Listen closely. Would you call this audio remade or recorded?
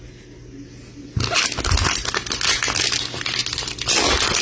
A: recorded